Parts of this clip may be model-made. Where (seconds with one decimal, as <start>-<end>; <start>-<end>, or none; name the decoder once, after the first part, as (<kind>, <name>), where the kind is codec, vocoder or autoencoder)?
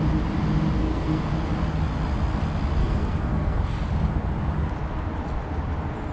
0.8-1.3 (codec, SNAC); 2.8-3.9